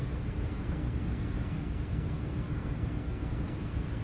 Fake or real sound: fake